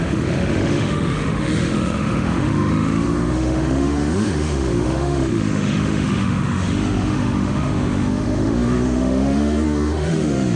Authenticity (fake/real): fake